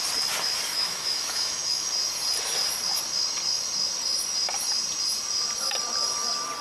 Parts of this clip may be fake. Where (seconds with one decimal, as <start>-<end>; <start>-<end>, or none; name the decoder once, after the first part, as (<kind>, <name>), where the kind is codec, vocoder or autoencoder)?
0.7-1.9 (autoencoder, DAC-VAE)